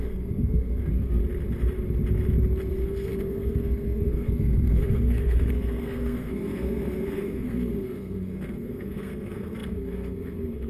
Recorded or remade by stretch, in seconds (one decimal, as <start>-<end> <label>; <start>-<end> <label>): 0.0-1.2 remade; 1.2-2.7 recorded; 2.7-10.7 remade